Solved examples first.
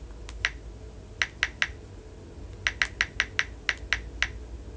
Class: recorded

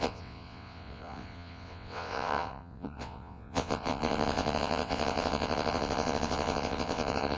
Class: remade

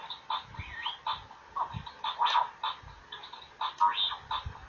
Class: recorded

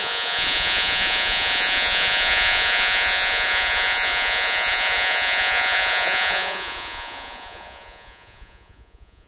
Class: remade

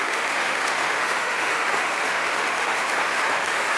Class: remade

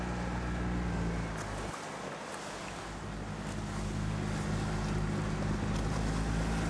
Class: recorded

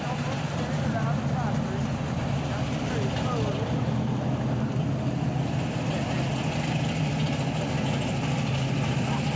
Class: recorded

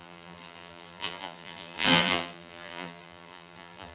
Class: remade